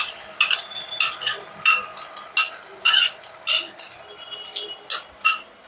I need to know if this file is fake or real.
real